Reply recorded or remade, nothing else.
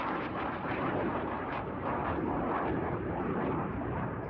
remade